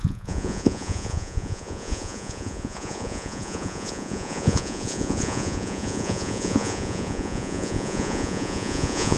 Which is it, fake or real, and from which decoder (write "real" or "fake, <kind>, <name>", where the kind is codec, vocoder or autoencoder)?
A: fake, vocoder, Vocos